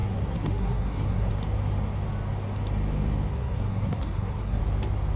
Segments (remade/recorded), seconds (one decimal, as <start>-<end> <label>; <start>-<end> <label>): 0.0-1.3 remade; 1.3-3.3 recorded; 3.3-4.6 remade; 4.6-5.2 recorded